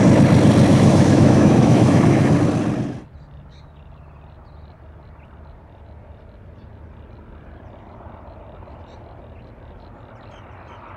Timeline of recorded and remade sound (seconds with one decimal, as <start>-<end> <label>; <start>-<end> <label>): 0.0-0.7 recorded; 0.7-2.3 remade; 2.3-11.0 recorded